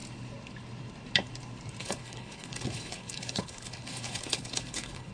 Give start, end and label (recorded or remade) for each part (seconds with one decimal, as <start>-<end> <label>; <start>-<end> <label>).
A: 0.0-1.8 recorded; 1.8-5.1 remade

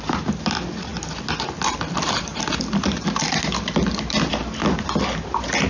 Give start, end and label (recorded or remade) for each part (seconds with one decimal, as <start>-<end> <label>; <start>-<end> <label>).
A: 0.0-5.7 recorded